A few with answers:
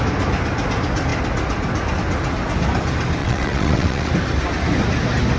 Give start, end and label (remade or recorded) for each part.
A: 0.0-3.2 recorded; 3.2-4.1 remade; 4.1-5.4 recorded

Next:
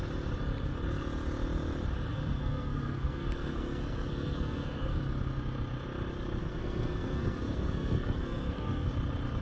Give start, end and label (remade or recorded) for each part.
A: 0.0-2.1 recorded; 2.1-5.0 remade; 5.0-6.4 recorded; 6.4-8.9 remade; 8.9-9.4 recorded

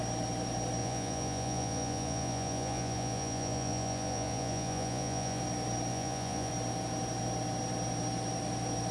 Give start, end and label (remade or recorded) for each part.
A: 0.0-0.8 recorded; 0.8-5.4 remade; 5.4-5.9 recorded; 5.9-6.5 remade; 6.5-8.9 recorded